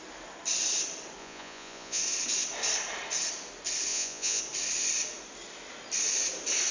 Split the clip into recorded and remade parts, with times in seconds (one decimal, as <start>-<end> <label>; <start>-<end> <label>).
0.0-1.2 recorded; 1.2-2.0 remade; 2.0-3.9 recorded; 3.9-4.4 remade; 4.4-6.7 recorded